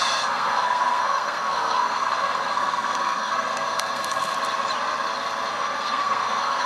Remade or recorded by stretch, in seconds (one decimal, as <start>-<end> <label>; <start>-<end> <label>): 0.0-4.3 remade; 4.3-5.5 recorded; 5.5-6.7 remade

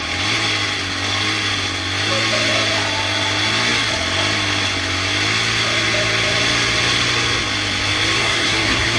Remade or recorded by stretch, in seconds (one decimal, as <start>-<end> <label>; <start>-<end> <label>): 0.0-8.2 recorded; 8.2-9.0 remade

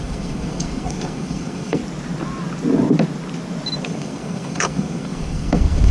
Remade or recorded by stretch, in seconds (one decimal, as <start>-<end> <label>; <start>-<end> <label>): 0.0-1.8 remade; 1.8-3.8 recorded; 3.8-5.9 remade